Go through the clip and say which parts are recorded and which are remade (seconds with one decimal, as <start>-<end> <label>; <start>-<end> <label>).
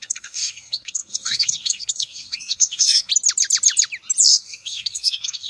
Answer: 0.0-3.1 remade; 3.1-4.3 recorded; 4.3-5.5 remade